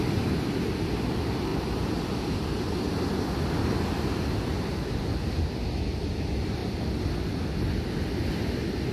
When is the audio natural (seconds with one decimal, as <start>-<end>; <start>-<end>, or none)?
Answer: 0.0-8.9